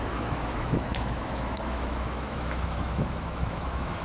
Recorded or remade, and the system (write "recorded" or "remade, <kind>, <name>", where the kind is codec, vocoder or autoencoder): remade, autoencoder, DAC-VAE